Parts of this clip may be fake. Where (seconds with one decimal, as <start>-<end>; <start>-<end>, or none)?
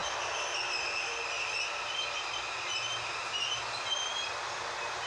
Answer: none